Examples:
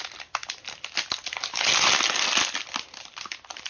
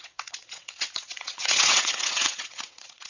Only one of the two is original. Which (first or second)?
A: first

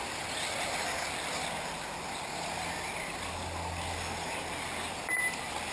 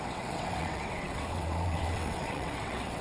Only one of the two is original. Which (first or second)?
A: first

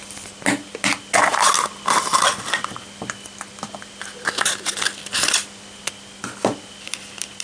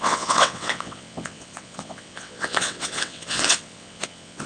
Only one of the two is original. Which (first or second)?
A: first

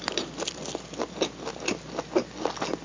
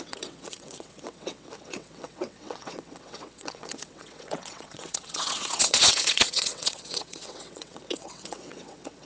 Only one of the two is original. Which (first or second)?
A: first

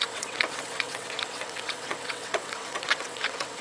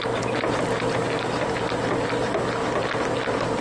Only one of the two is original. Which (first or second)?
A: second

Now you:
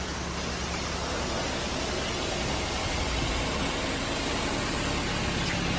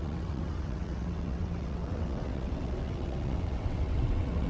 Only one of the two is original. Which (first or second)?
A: first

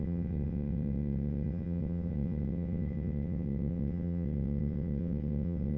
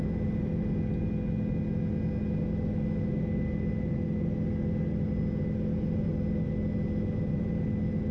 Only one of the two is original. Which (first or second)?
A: second